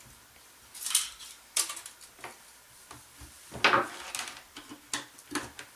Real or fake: real